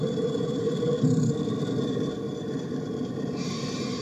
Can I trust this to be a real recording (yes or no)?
no